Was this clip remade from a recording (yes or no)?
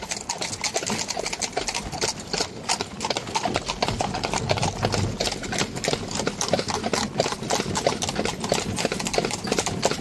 no